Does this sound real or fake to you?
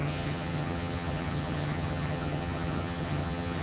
fake